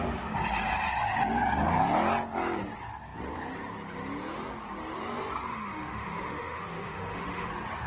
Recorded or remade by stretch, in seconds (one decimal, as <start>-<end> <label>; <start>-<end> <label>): 0.0-5.5 recorded; 5.5-7.5 remade; 7.5-7.9 recorded